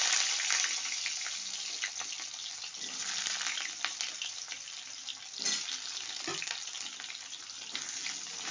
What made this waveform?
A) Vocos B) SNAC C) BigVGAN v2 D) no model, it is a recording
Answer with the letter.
D